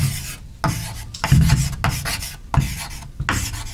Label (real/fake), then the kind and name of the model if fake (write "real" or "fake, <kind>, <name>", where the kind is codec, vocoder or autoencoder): real